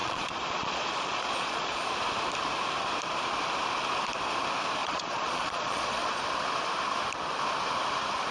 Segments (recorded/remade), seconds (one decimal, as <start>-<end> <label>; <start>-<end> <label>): 0.0-1.9 remade; 1.9-4.8 recorded; 4.8-6.2 remade; 6.2-8.3 recorded